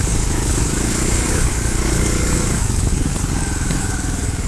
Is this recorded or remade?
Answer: remade